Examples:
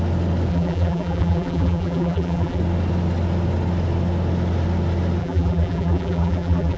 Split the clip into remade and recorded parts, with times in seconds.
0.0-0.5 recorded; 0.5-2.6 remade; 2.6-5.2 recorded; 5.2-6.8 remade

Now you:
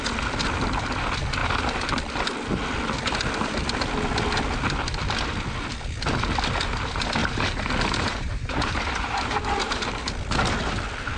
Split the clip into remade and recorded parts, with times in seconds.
0.0-7.2 recorded; 7.2-10.1 remade; 10.1-11.2 recorded

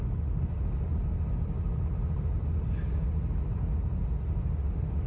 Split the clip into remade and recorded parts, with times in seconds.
0.0-5.1 recorded

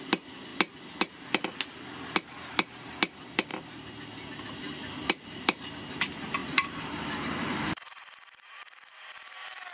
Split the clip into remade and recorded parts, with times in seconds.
0.0-4.8 recorded; 4.8-5.6 remade; 5.6-6.4 recorded; 6.4-9.7 remade

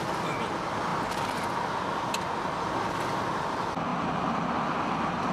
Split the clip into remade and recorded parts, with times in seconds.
0.0-3.9 recorded; 3.9-4.4 remade; 4.4-5.3 recorded